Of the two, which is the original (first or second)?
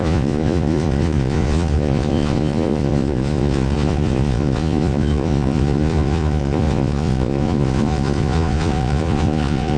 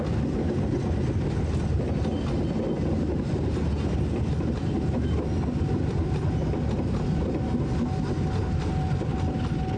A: second